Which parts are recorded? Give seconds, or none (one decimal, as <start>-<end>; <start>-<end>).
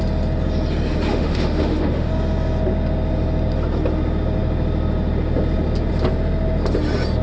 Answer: 0.0-1.1; 2.1-7.2